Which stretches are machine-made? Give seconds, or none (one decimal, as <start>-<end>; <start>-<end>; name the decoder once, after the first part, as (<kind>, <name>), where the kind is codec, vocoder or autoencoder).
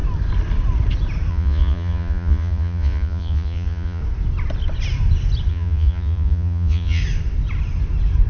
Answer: 1.3-4.0 (vocoder, Vocos); 5.5-7.0